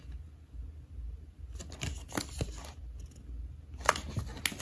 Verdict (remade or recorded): recorded